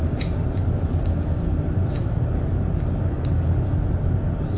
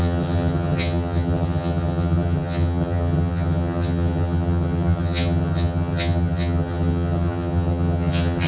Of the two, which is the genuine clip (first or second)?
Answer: first